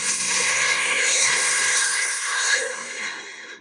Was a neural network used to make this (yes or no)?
yes